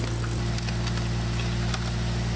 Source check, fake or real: real